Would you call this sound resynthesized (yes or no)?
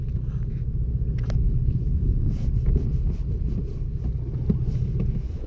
no